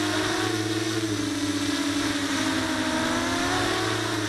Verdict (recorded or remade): recorded